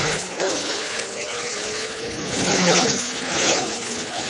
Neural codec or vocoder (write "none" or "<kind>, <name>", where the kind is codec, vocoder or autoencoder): codec, HILCodec